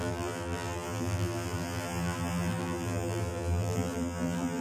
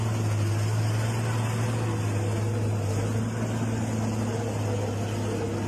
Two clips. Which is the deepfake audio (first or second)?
first